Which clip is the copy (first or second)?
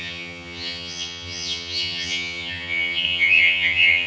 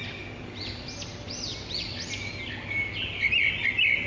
first